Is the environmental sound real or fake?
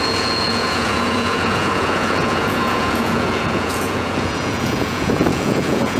fake